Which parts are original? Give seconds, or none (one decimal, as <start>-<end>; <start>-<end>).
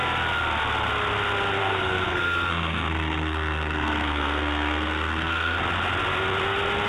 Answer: 0.0-1.6; 5.6-6.9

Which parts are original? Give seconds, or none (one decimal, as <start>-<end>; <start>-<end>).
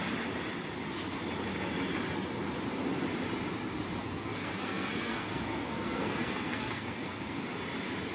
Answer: 0.0-4.0; 7.4-8.1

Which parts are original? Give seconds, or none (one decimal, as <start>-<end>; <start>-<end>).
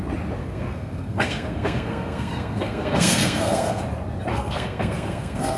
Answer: 0.0-0.4; 3.8-4.3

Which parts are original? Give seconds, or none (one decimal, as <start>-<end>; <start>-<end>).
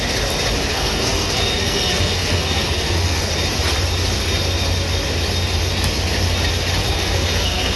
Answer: 0.0-0.7; 3.3-6.8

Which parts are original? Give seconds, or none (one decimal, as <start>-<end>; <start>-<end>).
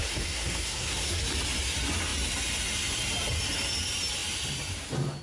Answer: 1.2-5.2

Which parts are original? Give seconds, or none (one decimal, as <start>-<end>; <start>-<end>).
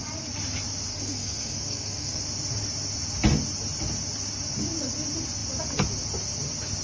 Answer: 0.0-0.9; 2.2-6.8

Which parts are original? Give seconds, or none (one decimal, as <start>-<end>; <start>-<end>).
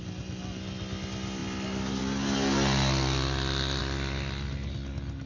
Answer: 0.0-5.3